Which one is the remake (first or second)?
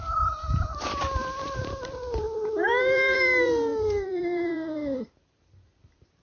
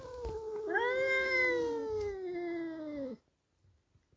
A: first